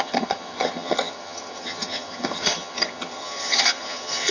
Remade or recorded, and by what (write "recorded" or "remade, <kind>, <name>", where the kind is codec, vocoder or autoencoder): remade, vocoder, HiFi-GAN